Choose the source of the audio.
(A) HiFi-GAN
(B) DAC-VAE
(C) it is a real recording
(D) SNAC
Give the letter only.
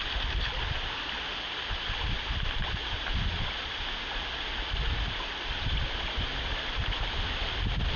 C